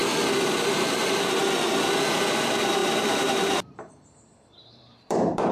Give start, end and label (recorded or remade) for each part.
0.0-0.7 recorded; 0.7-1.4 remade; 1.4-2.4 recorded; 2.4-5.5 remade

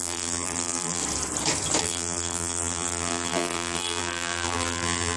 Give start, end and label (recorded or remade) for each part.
0.0-1.0 remade; 1.0-1.8 recorded; 1.8-5.2 remade

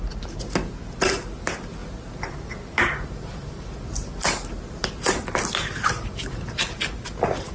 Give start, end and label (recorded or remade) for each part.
0.0-7.5 recorded

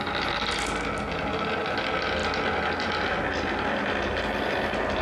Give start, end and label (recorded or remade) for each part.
0.0-5.0 recorded

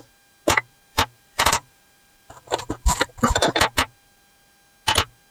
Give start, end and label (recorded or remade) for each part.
0.0-0.9 recorded; 0.9-3.6 remade; 3.6-5.3 recorded

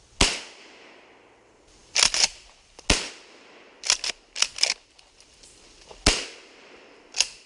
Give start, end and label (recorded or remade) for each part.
0.0-7.5 recorded

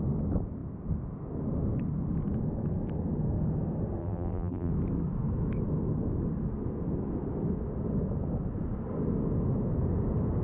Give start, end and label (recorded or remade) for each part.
0.0-4.0 recorded; 4.0-4.7 remade; 4.7-10.4 recorded